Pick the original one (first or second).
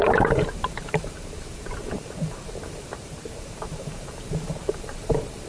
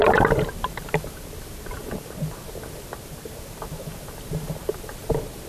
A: second